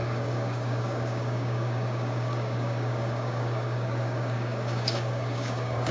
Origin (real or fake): fake